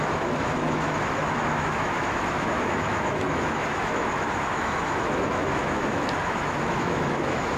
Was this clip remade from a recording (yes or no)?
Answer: yes